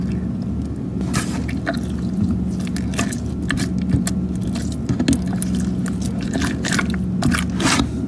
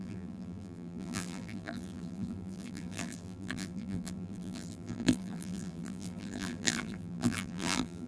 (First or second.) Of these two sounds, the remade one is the second